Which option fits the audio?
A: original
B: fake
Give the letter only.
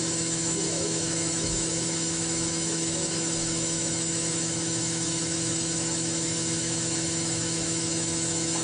B